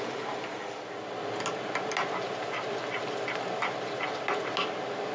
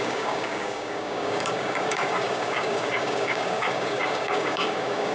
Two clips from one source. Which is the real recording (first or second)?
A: first